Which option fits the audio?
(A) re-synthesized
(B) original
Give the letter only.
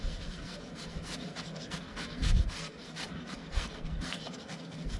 A